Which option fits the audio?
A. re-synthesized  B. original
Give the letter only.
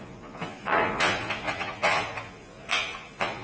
A